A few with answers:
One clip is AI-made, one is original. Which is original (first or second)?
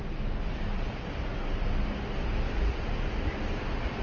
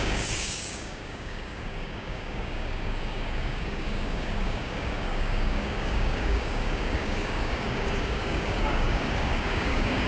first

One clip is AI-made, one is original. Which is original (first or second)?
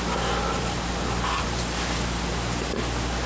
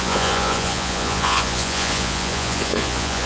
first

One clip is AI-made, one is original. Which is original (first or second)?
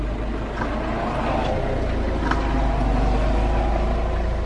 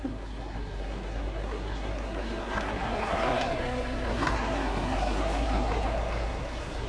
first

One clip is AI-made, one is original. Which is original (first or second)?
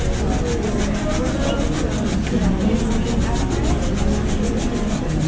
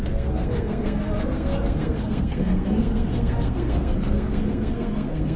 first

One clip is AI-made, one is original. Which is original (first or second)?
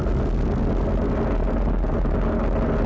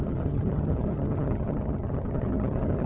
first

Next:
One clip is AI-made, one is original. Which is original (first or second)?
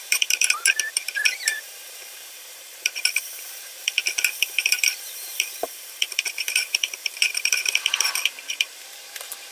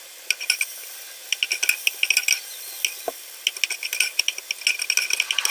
second